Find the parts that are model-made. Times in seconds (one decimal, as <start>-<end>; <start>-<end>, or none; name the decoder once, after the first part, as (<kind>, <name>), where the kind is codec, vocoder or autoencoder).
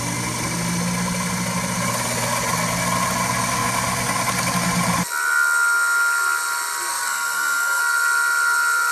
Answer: 6.9-7.8 (codec, SNAC)